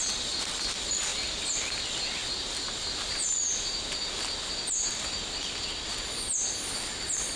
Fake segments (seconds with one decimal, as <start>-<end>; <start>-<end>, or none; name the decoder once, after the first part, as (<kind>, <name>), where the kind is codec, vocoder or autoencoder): none